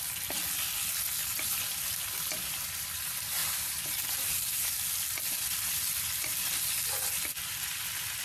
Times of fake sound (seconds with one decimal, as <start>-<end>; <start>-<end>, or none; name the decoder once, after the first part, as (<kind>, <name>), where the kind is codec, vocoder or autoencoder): 1.2-3.0 (vocoder, BigVGAN v2)